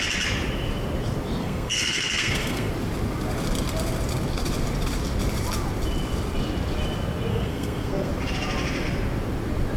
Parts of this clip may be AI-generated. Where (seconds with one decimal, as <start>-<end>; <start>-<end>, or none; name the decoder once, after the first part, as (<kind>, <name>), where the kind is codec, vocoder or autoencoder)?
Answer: 1.4-2.7 (codec, SNAC); 7.3-8.1